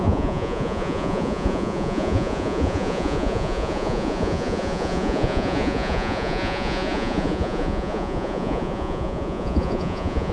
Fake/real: fake